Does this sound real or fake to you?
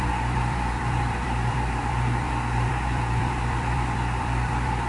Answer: fake